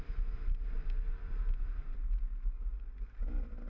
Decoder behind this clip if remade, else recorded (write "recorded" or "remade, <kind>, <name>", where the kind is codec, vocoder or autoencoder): recorded